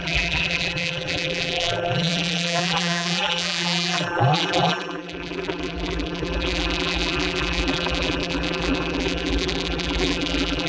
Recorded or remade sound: remade